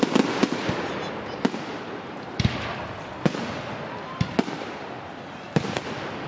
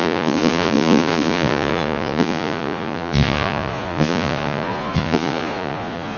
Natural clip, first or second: first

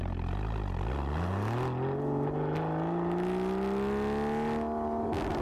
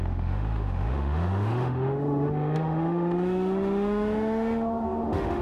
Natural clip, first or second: first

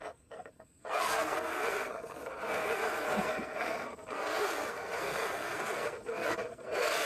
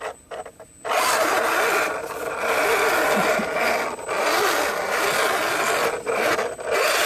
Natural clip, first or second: second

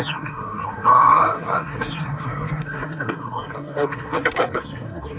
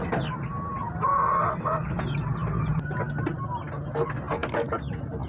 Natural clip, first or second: second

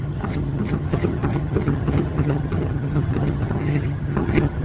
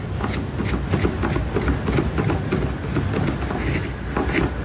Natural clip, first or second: second